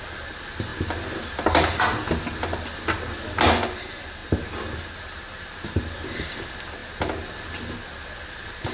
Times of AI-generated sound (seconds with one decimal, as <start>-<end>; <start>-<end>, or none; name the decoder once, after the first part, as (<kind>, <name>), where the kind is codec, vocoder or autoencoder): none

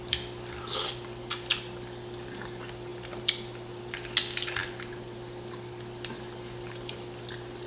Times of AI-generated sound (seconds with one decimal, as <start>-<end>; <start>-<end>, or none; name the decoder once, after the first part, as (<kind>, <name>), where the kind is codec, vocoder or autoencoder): none

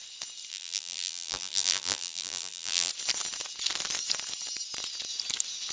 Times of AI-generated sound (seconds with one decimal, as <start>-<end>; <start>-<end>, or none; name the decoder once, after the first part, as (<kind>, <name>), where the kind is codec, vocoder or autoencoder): 0.5-2.9 (vocoder, BigVGAN v2)

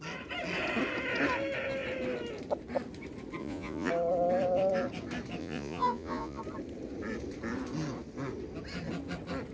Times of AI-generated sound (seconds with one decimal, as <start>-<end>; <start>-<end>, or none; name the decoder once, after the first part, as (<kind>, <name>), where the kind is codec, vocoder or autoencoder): 3.4-3.9 (vocoder, Vocos); 5.4-6.4

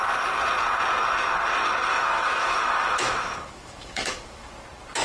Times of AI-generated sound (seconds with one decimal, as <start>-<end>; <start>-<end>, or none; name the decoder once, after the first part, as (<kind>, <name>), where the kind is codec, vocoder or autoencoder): 1.9-4.5 (autoencoder, DAC-VAE)

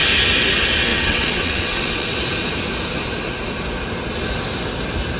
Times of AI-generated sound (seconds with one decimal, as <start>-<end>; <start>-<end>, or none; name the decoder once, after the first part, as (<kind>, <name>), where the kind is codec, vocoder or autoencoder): 0.9-2.1 (vocoder, WaveNeXt)

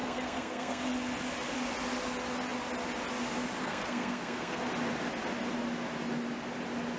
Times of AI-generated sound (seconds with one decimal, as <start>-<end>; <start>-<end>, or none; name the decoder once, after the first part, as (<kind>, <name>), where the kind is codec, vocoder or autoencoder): 0.0-0.8 (codec, SNAC); 3.6-4.7